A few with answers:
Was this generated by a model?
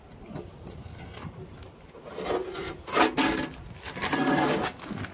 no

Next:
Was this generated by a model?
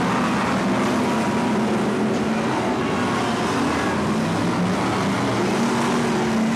no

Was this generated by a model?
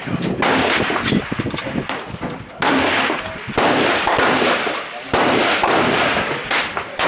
yes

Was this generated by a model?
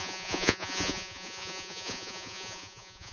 yes